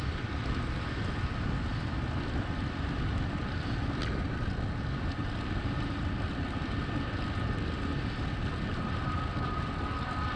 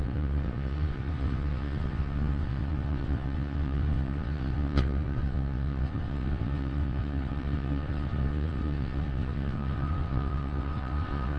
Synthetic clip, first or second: second